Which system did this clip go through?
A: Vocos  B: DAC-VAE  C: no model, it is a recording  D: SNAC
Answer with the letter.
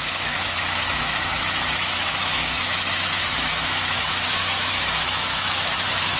B